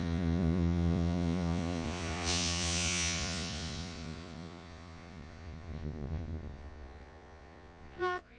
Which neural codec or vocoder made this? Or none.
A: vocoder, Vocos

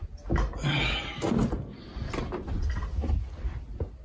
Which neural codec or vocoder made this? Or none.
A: none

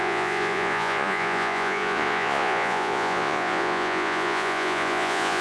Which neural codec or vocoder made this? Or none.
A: vocoder, Vocos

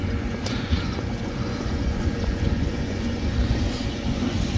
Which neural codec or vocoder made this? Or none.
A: vocoder, Vocos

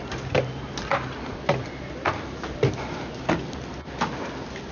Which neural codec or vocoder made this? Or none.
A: none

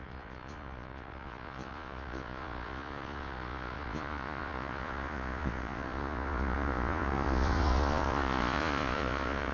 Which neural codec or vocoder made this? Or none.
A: vocoder, Vocos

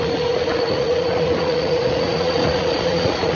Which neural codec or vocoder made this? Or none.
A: vocoder, Vocos